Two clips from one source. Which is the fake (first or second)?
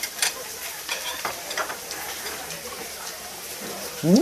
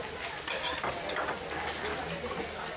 first